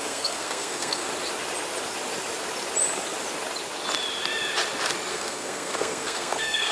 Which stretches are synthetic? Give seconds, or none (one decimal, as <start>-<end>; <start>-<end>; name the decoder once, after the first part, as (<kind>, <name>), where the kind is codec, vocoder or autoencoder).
0.0-1.1 (codec, SNAC); 5.1-6.7